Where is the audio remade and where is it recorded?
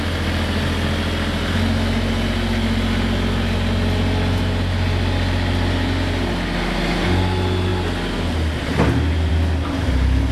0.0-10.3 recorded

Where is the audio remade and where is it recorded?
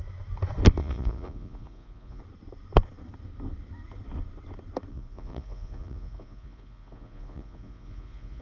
0.0-0.8 recorded; 0.8-2.2 remade; 2.2-4.9 recorded; 4.9-8.4 remade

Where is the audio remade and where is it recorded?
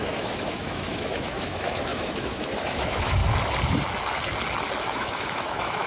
0.0-3.2 remade; 3.2-4.8 recorded; 4.8-5.9 remade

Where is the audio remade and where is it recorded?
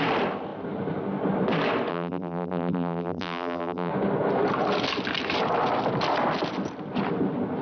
0.0-1.9 recorded; 1.9-3.9 remade; 3.9-7.6 recorded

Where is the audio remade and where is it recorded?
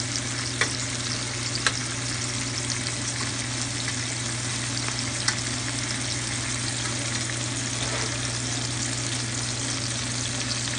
0.0-10.8 recorded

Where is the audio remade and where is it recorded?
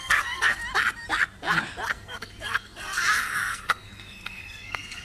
0.0-0.6 remade; 0.6-1.9 recorded; 1.9-5.0 remade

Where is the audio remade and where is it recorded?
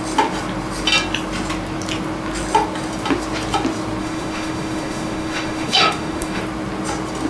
0.0-4.0 recorded; 4.0-6.4 remade; 6.4-7.3 recorded